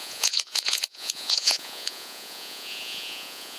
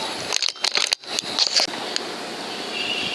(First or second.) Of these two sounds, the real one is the second